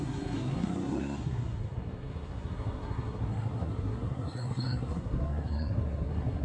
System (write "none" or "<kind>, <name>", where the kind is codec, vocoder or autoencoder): codec, SNAC